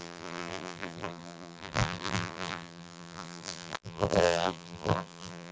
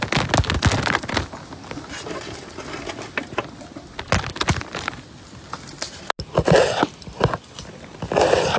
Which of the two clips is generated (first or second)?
first